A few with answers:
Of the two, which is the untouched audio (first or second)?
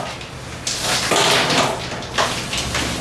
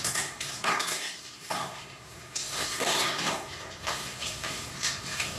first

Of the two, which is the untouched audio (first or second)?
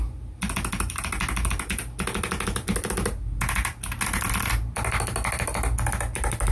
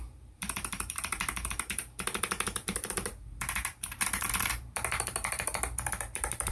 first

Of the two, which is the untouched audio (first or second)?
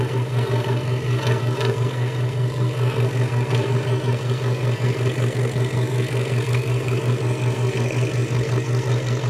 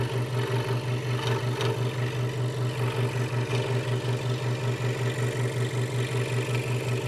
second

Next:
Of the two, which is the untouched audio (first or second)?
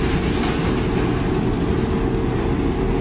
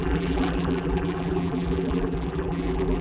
first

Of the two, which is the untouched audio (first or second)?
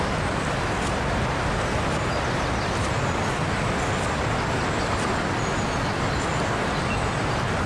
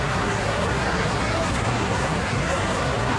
first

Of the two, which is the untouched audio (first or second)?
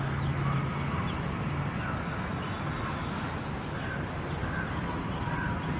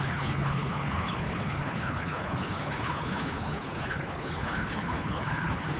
first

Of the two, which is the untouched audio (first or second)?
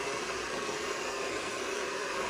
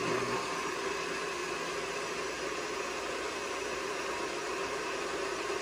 second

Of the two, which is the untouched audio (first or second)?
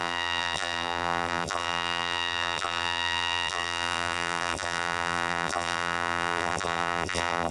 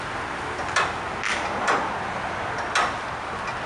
second